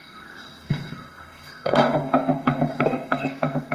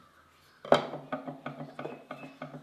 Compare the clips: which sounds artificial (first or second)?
first